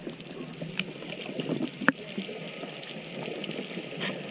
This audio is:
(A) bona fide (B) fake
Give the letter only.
A